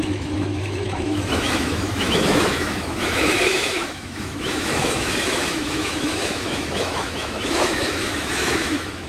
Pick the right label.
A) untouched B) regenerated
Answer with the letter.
B